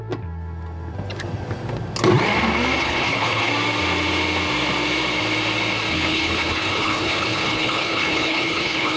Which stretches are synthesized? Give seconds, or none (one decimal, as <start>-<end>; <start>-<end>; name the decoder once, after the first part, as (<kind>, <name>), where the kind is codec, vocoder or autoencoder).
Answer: 2.8-3.5 (codec, HILCodec); 5.9-9.0